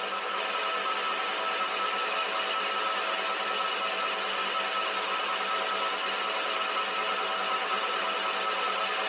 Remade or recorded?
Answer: recorded